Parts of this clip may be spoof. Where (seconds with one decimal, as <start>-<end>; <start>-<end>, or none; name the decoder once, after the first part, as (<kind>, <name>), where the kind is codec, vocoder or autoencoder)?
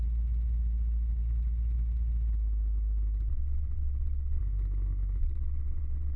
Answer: 3.3-4.4 (vocoder, WaveNeXt); 5.2-6.2